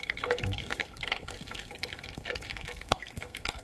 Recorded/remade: remade